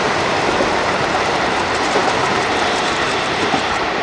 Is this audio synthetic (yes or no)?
yes